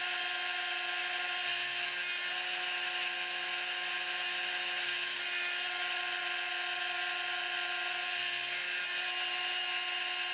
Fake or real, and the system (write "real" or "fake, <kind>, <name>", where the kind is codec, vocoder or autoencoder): real